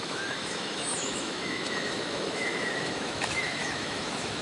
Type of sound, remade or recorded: remade